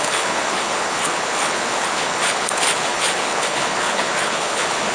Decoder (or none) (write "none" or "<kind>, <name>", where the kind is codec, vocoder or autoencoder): codec, HILCodec